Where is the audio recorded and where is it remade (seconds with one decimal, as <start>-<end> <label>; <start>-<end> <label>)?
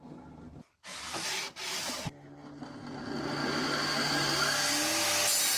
0.0-0.9 recorded; 0.9-2.6 remade; 2.6-3.4 recorded; 3.4-4.4 remade; 4.4-5.6 recorded